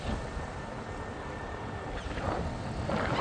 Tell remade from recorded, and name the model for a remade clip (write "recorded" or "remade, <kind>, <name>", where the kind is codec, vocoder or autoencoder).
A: recorded